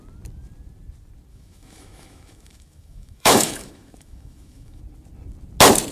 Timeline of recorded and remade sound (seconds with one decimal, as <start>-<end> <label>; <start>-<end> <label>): 0.0-1.3 recorded; 1.3-4.8 remade; 4.8-5.9 recorded